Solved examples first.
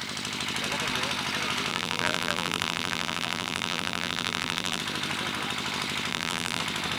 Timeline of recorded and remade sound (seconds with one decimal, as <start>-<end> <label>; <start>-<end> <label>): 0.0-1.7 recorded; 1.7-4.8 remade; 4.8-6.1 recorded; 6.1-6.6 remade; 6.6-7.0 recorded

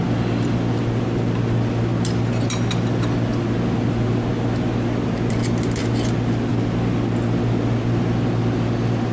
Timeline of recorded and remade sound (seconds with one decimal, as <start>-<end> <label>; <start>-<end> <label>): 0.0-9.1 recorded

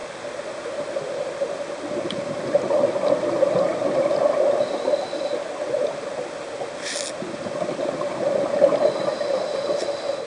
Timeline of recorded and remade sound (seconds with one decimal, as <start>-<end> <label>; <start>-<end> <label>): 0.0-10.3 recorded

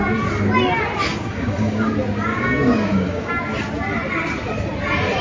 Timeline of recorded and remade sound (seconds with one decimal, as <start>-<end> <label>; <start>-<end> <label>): 0.0-1.1 recorded; 1.1-1.9 remade; 1.9-2.3 recorded; 2.3-3.3 remade; 3.3-5.2 recorded